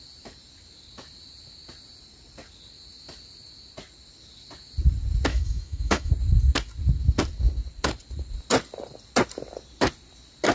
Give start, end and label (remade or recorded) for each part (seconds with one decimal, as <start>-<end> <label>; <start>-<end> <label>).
0.0-5.3 recorded; 5.3-6.1 remade; 6.1-10.5 recorded